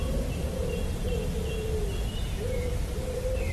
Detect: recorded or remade recorded